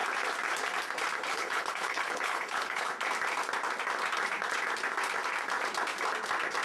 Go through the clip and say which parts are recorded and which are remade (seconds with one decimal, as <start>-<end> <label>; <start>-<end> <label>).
0.0-1.3 recorded; 1.3-2.9 remade; 2.9-6.6 recorded